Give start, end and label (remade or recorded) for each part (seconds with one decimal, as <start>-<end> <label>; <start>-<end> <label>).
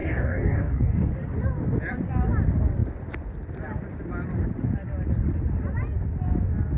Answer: 0.0-1.1 remade; 1.1-6.8 recorded